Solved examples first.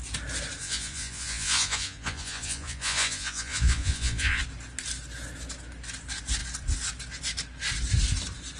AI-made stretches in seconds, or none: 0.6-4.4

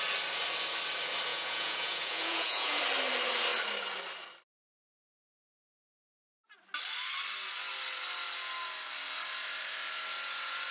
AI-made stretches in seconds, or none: 1.3-2.8

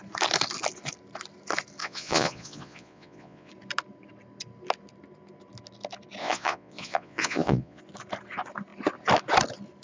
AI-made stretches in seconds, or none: 1.8-3.5; 6.2-7.8

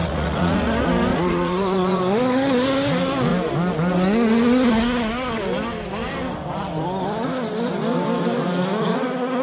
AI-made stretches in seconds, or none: 0.0-0.7; 1.1-2.0

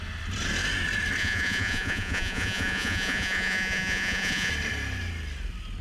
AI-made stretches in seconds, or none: 1.2-4.5

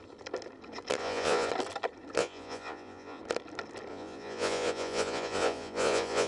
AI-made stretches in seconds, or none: 1.0-1.5; 2.2-3.2; 3.9-6.3